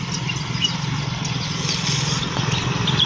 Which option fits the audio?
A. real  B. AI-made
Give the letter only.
A